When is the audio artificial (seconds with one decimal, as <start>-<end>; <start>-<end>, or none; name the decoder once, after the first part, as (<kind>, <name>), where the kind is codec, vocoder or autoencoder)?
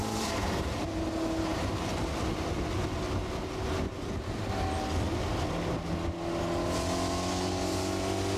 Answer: 0.0-0.7 (vocoder, BigVGAN v2)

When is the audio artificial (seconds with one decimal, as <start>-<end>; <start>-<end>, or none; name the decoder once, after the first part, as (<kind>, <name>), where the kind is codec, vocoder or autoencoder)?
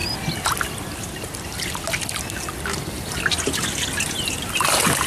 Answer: none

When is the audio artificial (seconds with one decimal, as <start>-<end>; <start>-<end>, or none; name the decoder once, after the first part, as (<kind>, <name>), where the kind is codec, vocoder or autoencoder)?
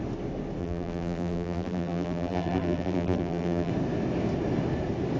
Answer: 0.6-3.7 (vocoder, BigVGAN v2)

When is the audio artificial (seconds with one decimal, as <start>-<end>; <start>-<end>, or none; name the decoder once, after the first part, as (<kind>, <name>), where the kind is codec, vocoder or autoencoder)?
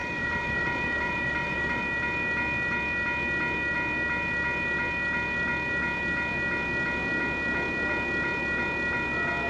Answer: 0.0-1.8 (vocoder, BigVGAN v2)